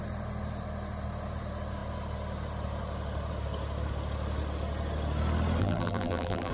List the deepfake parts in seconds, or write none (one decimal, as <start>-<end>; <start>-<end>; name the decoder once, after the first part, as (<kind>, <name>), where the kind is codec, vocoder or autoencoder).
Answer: 5.6-6.5 (vocoder, BigVGAN v2)